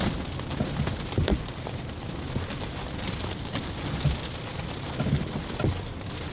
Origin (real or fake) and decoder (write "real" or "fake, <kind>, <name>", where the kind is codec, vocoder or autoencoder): real